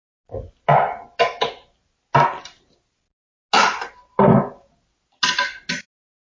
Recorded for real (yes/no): yes